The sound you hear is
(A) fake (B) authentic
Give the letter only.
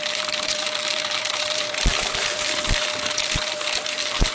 A